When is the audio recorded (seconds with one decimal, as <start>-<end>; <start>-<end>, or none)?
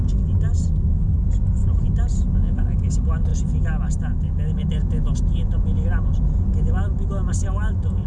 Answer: 0.0-8.1